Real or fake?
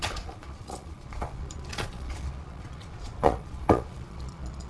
fake